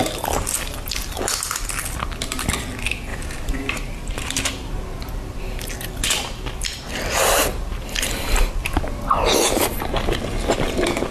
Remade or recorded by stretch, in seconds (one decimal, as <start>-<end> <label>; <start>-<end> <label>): 0.0-3.1 recorded; 3.1-3.7 remade; 3.7-11.1 recorded